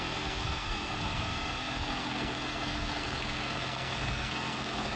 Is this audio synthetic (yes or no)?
yes